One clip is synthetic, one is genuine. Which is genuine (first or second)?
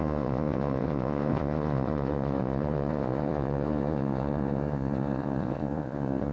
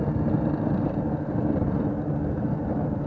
second